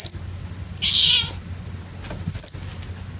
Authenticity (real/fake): real